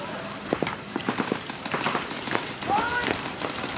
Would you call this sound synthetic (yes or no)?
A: yes